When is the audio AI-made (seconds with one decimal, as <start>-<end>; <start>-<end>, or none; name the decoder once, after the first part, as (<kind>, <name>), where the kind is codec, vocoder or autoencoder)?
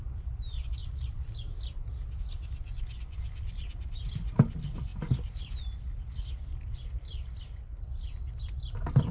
0.8-1.3 (vocoder, Vocos); 2.6-3.2